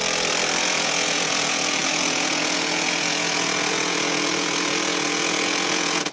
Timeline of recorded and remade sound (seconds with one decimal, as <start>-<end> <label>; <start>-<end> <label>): 0.0-0.6 recorded; 0.6-6.1 remade